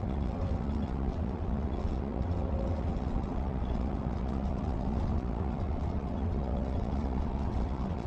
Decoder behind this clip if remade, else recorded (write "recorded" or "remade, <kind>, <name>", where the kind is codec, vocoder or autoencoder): remade, vocoder, WaveNeXt